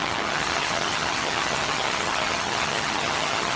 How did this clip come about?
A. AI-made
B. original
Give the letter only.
A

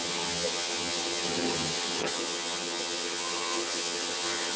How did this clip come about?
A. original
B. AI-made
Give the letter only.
B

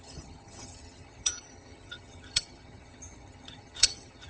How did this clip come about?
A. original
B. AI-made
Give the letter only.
B